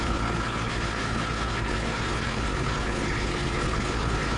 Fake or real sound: fake